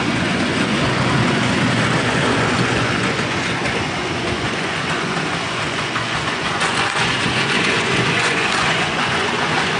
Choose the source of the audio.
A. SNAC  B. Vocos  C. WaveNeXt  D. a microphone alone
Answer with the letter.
B